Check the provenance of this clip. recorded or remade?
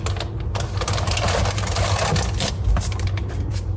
recorded